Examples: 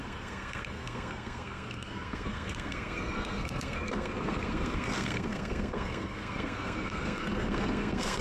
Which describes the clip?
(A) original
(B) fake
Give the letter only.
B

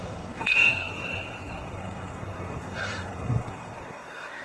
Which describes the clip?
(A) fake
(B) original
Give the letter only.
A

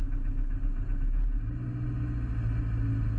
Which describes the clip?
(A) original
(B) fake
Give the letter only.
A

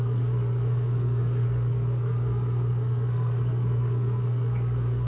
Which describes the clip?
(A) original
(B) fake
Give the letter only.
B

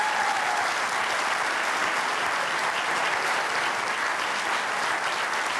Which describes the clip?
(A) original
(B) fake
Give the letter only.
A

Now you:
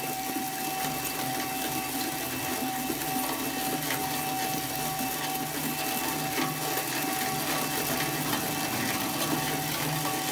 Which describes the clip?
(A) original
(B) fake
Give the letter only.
A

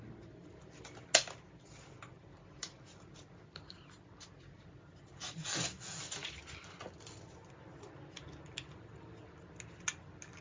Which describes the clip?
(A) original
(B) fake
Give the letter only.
A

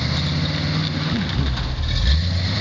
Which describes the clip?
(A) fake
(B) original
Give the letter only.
B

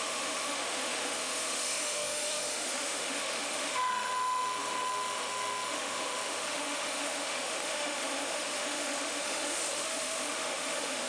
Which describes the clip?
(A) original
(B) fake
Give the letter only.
B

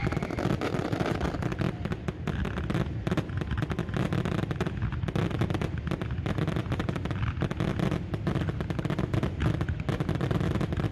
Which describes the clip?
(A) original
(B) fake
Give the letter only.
A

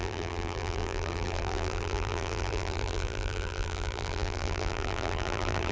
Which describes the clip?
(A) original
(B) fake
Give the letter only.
B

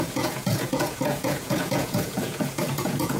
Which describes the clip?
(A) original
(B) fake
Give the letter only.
B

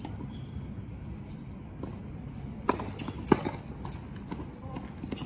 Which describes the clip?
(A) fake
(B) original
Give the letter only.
B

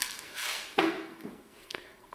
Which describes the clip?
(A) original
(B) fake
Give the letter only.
B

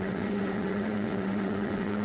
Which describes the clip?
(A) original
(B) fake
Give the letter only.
B